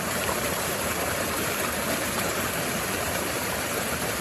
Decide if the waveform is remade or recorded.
remade